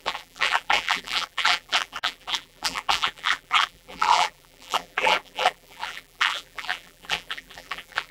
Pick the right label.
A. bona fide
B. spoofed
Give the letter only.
B